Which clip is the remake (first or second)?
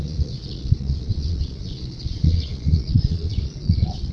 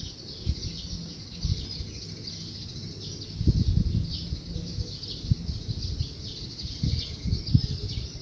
first